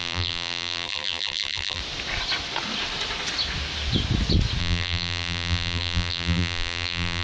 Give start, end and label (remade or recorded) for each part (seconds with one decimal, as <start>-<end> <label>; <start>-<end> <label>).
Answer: 0.0-1.8 remade; 1.8-4.6 recorded; 4.6-7.2 remade